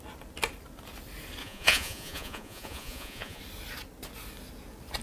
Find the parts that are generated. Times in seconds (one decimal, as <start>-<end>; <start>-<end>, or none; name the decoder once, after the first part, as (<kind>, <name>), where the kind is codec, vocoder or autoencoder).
1.4-3.4 (vocoder, Vocos)